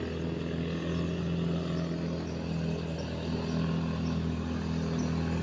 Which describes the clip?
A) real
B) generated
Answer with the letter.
A